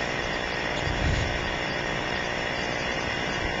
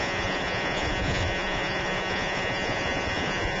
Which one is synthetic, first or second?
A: second